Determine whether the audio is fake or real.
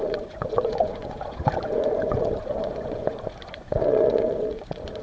fake